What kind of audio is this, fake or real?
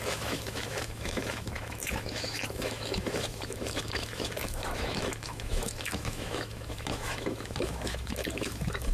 fake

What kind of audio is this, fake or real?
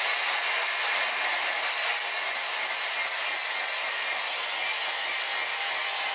real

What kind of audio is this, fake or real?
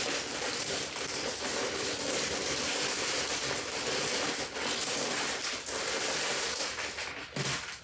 real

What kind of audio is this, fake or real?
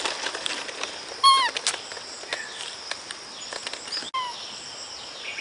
real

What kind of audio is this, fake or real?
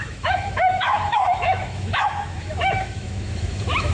fake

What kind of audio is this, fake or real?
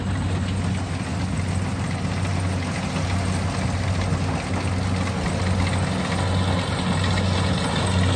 real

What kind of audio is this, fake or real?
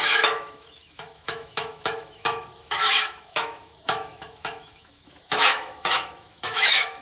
fake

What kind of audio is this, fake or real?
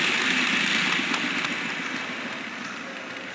real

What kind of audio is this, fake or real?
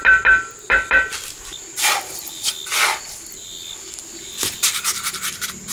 real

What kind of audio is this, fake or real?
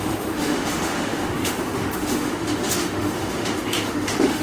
fake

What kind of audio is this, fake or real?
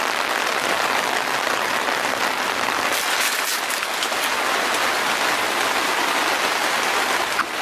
real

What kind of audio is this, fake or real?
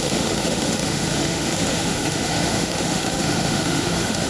fake